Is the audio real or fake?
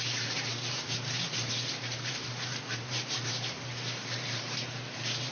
fake